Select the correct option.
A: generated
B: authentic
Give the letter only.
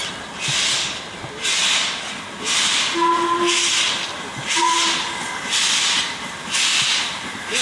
B